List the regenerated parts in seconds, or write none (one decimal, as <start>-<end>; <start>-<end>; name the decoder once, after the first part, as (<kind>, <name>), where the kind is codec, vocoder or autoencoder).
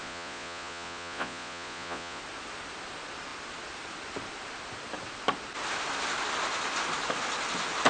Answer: 0.0-2.2 (vocoder, Vocos)